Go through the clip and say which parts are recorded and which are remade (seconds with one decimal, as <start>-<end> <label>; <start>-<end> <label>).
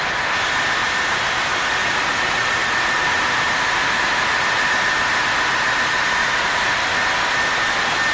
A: 0.0-1.8 recorded; 1.8-2.6 remade; 2.6-6.2 recorded; 6.2-6.7 remade; 6.7-8.1 recorded